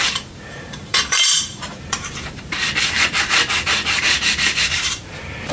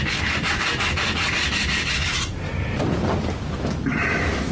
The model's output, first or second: first